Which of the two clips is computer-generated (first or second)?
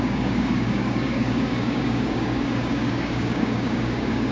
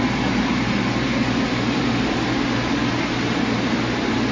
first